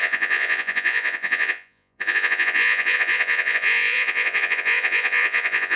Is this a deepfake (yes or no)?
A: yes